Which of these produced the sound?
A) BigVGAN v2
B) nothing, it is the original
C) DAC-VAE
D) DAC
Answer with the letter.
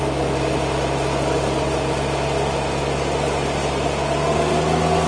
B